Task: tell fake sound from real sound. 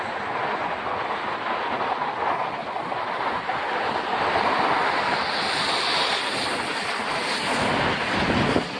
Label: real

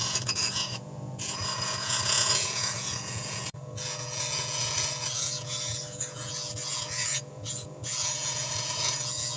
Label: fake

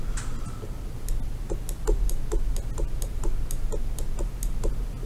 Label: real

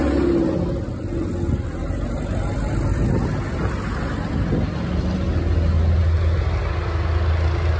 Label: real